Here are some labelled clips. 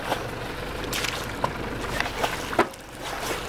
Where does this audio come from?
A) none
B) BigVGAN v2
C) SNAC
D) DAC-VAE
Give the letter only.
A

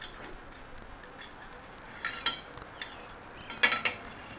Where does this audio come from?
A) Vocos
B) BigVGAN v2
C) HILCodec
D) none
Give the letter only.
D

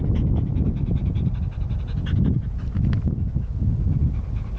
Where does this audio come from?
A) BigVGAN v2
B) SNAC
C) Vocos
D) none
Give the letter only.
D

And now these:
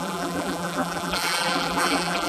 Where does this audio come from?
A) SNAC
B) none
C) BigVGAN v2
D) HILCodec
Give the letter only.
C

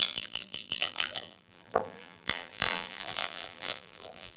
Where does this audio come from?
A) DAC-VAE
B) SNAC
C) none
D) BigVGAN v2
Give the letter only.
D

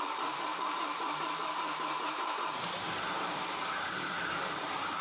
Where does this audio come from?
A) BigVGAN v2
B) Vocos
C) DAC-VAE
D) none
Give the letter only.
A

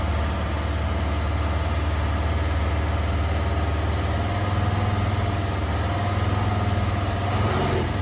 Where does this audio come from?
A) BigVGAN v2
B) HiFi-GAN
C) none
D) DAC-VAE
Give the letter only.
C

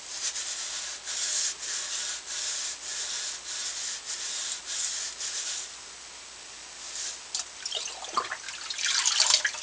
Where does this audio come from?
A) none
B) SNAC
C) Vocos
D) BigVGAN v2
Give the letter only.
A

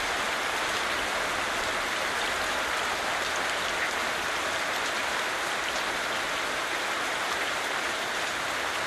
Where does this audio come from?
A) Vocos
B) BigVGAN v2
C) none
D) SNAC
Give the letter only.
C